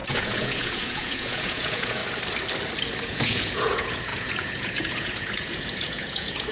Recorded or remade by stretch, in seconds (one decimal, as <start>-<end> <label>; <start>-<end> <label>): 0.0-2.0 remade; 2.0-3.0 recorded; 3.0-6.5 remade